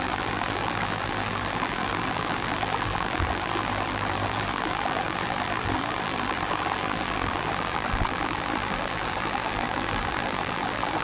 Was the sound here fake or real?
fake